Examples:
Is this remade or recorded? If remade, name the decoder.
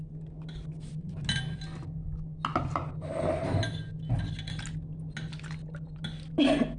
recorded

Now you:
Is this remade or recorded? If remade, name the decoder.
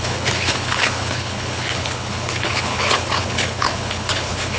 remade, codec, HILCodec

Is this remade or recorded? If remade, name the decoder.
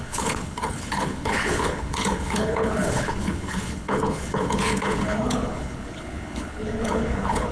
remade, codec, HILCodec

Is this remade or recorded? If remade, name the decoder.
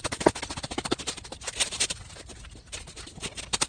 recorded